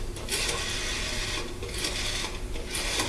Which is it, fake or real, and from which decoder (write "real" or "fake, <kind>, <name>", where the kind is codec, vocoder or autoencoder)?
real